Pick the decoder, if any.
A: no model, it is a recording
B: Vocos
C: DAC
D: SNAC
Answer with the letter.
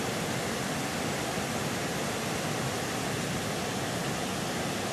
A